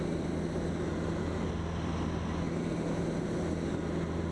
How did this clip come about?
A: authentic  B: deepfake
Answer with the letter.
A